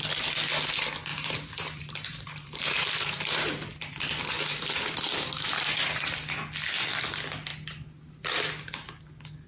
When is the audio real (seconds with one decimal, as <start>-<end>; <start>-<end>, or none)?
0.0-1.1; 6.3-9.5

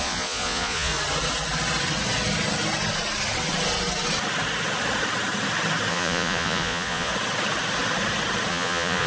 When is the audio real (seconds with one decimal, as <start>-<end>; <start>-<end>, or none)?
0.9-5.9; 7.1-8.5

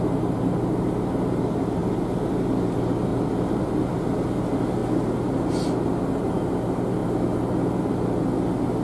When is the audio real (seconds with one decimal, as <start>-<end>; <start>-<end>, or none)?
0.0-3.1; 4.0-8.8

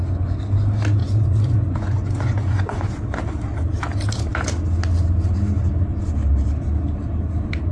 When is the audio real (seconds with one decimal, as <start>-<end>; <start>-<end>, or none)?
0.0-1.0; 3.0-7.7